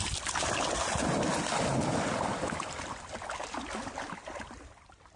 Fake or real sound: real